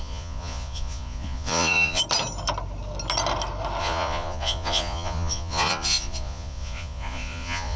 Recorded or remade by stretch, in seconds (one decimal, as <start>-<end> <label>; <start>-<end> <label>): 0.0-2.0 remade; 2.0-3.8 recorded; 3.8-7.8 remade